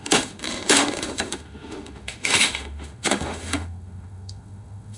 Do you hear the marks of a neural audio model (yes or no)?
yes